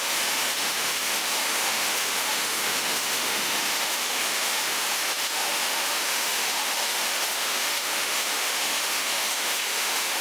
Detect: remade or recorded remade